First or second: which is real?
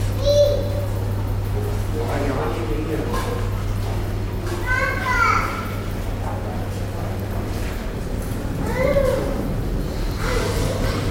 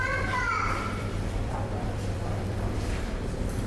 first